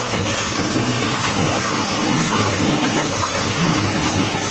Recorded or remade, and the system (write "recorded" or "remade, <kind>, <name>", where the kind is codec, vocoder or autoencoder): remade, codec, SNAC